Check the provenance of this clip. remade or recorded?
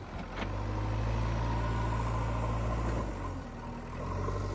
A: recorded